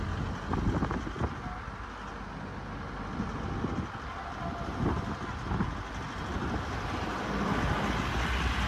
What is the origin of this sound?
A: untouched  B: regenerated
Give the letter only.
A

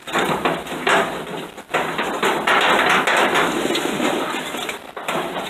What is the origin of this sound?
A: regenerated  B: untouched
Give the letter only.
B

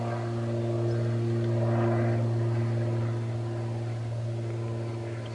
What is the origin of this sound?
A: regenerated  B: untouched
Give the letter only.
B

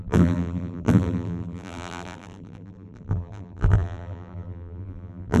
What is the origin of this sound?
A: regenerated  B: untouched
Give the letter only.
A